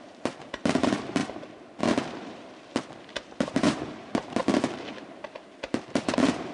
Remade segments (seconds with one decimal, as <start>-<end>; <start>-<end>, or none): 0.0-1.2; 1.8-6.5